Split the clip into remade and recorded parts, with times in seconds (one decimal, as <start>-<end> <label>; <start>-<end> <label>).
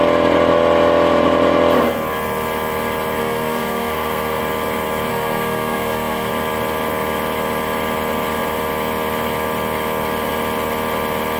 0.0-3.2 recorded; 3.2-4.4 remade; 4.4-5.1 recorded; 5.1-6.3 remade; 6.3-11.4 recorded